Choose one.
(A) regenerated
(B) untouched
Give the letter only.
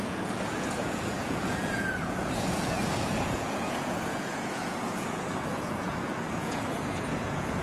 A